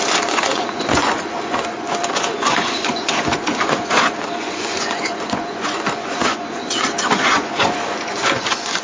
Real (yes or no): no